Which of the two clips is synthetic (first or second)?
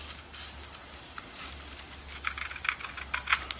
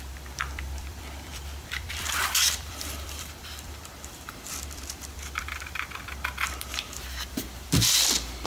second